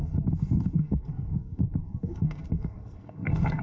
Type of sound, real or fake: fake